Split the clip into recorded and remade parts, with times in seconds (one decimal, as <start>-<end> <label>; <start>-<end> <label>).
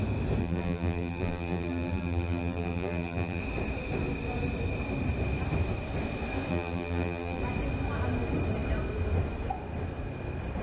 0.0-0.4 recorded; 0.4-3.4 remade; 3.4-6.5 recorded; 6.5-7.4 remade; 7.4-10.6 recorded